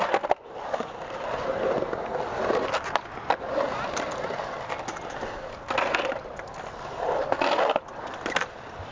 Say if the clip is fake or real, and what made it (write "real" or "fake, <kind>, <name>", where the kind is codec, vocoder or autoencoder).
real